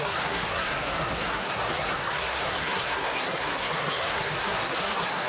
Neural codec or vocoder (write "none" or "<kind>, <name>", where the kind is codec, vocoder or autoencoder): codec, SNAC